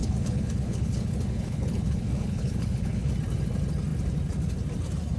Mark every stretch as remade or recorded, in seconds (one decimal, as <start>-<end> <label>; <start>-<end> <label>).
0.0-3.1 remade; 3.1-5.2 recorded